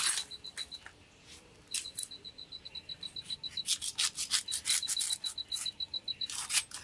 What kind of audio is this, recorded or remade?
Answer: recorded